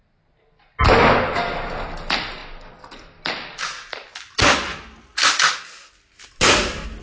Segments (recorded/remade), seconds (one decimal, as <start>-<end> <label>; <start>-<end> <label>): 0.0-7.0 recorded